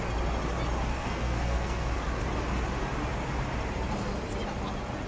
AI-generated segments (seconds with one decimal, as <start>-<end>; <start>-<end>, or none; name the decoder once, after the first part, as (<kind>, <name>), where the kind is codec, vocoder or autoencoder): 0.9-1.9 (codec, SNAC)